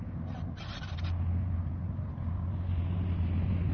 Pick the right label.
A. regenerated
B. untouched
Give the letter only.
B